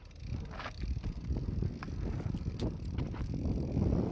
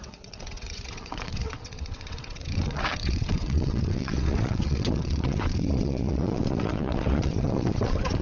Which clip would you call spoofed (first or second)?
second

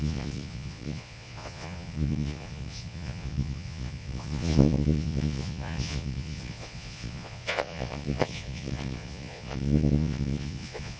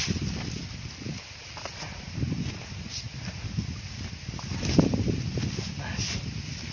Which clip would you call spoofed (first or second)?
first